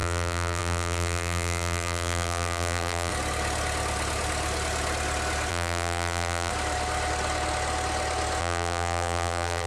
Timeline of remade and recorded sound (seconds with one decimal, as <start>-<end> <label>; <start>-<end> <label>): 0.0-3.1 remade; 3.1-5.5 recorded; 5.5-6.5 remade; 6.5-8.4 recorded; 8.4-9.7 remade